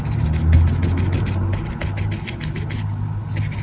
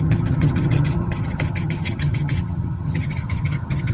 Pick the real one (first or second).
first